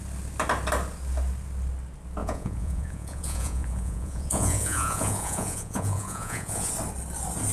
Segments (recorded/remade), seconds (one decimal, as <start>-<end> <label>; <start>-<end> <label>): 0.0-2.2 recorded; 2.2-6.7 remade; 6.7-7.5 recorded